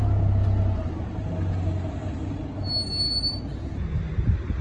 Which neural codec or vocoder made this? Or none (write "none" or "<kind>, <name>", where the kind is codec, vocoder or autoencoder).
none